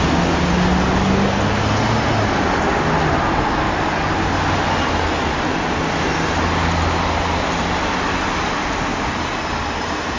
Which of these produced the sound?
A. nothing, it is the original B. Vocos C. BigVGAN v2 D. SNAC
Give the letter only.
A